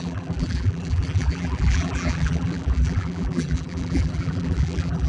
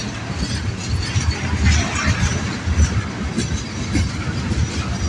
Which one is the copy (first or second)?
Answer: first